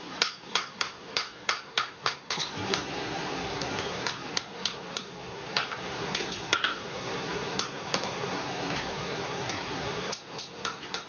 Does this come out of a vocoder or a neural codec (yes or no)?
yes